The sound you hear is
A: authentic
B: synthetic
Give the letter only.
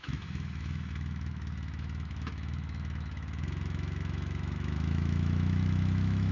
B